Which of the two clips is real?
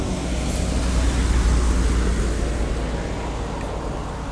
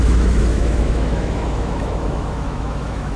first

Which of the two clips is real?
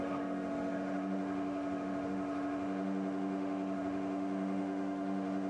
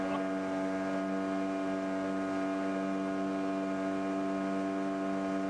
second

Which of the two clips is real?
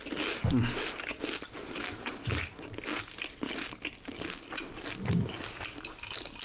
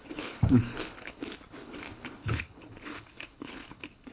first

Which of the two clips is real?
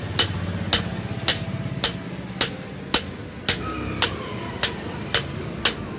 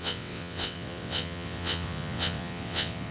first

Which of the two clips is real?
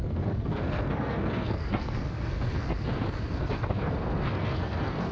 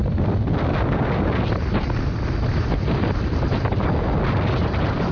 second